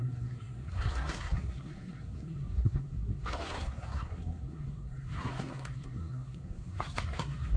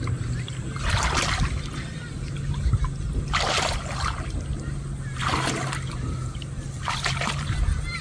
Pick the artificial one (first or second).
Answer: first